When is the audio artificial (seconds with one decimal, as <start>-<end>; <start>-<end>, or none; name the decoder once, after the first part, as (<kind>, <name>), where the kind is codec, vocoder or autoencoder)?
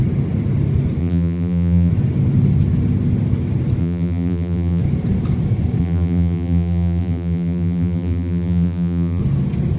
1.0-1.9 (vocoder, BigVGAN v2); 3.8-4.8; 5.8-9.2